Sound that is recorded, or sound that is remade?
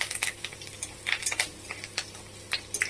recorded